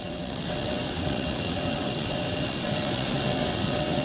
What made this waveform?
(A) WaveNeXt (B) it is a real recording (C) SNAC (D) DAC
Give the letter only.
A